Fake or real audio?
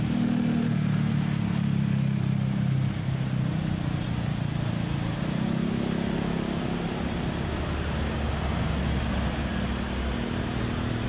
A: real